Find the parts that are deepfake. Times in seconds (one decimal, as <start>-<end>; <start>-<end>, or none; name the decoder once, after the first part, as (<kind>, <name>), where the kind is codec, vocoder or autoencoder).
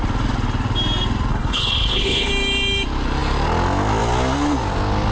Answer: 1.3-2.3 (codec, HILCodec)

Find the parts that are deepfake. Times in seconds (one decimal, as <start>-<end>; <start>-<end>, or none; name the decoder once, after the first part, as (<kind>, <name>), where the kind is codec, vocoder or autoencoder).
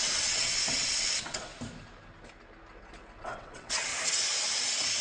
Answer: 0.0-1.5 (vocoder, WaveNeXt); 3.2-3.9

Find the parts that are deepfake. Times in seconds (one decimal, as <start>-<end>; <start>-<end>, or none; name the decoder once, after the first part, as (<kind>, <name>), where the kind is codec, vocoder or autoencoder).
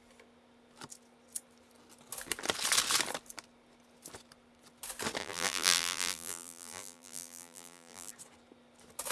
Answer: 5.2-8.1 (vocoder, BigVGAN v2)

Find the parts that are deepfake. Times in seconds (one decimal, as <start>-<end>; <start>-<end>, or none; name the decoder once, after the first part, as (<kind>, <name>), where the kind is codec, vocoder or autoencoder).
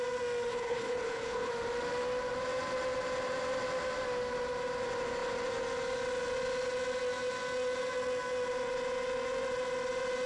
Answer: 0.5-1.5 (codec, HILCodec)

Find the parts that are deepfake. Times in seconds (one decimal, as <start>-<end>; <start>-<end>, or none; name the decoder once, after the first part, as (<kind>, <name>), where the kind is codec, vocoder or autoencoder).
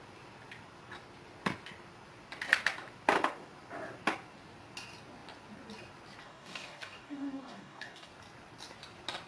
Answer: 6.2-8.1 (codec, DAC)